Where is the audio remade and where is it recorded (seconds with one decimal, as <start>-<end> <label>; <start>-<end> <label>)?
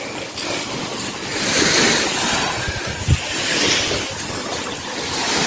0.0-1.3 recorded; 1.3-4.2 remade; 4.2-5.5 recorded